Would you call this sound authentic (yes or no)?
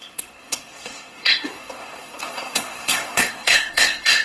no